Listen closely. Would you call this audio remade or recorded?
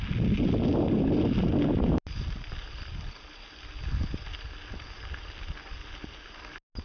recorded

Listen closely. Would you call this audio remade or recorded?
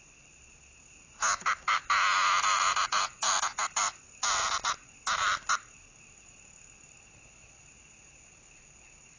recorded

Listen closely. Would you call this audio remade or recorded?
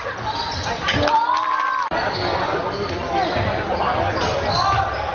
recorded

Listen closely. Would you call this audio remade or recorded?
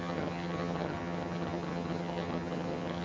remade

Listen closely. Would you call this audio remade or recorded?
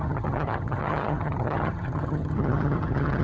remade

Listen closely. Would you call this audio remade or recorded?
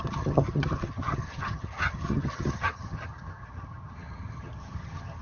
remade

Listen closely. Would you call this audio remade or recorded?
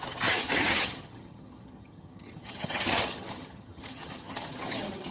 remade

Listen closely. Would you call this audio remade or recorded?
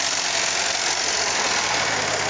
recorded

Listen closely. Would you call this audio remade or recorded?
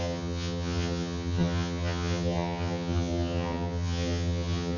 remade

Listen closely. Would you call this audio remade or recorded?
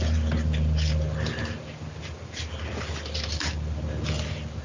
recorded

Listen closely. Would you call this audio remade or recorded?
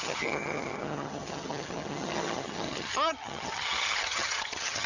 remade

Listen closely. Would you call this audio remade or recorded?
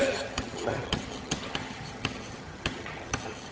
remade